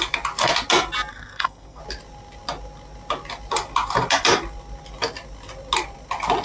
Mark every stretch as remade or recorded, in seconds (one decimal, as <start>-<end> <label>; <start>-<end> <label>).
0.0-1.1 recorded; 1.1-1.8 remade; 1.8-6.4 recorded